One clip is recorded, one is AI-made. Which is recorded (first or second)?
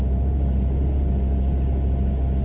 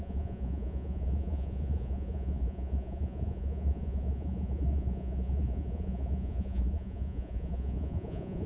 first